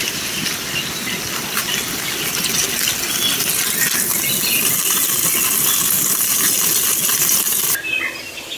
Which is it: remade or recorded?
recorded